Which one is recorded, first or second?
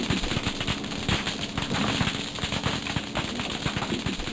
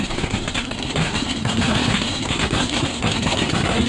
first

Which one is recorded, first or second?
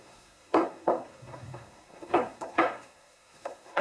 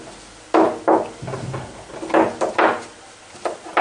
second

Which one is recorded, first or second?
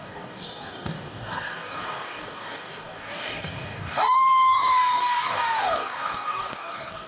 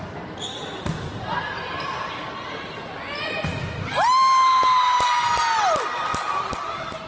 second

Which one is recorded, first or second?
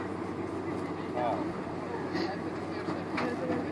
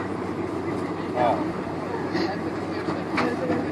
first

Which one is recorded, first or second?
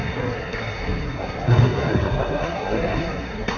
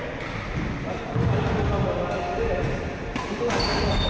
second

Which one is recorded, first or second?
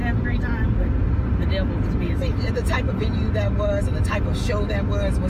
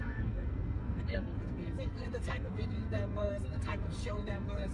first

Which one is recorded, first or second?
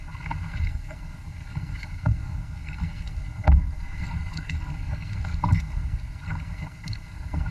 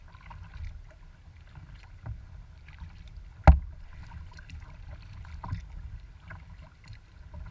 second